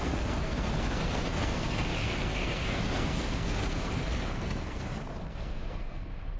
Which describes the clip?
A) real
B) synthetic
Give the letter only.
B